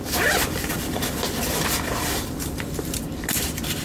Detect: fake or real fake